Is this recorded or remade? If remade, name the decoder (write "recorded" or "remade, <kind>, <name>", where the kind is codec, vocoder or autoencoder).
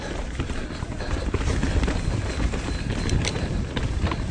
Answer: recorded